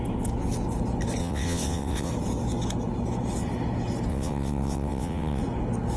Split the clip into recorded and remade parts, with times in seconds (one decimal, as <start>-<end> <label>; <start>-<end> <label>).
0.0-1.2 recorded; 1.2-2.1 remade; 2.1-4.1 recorded; 4.1-5.4 remade; 5.4-6.0 recorded